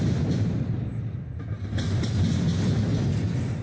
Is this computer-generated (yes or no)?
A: no